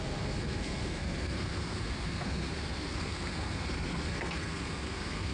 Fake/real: fake